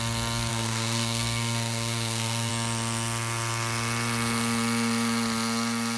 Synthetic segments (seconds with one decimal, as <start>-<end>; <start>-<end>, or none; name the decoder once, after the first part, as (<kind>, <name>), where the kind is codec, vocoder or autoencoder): 0.5-2.5 (codec, SNAC)